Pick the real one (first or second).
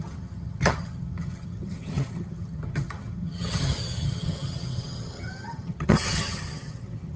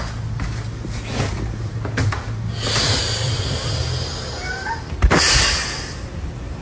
second